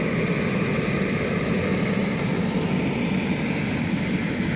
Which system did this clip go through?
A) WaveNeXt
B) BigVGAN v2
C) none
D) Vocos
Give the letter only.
C